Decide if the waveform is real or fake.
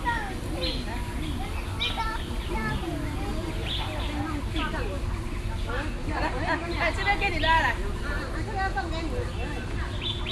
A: real